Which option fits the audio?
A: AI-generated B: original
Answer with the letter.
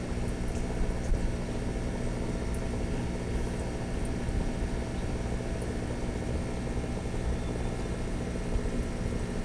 B